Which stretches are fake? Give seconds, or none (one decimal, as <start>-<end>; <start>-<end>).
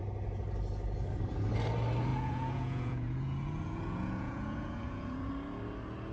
2.1-5.3